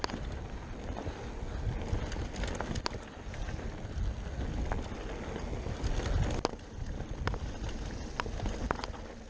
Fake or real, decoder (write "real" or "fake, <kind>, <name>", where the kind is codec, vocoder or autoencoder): real